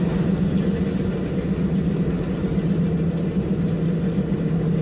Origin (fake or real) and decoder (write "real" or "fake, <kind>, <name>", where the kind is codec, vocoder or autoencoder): real